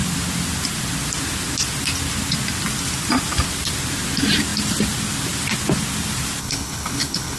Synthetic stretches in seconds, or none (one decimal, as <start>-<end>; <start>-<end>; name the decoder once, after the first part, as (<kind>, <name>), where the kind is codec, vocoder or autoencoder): 6.4-7.4 (codec, HILCodec)